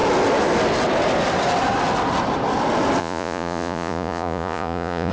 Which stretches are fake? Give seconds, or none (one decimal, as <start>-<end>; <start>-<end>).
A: 3.0-5.1